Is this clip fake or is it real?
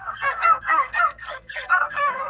fake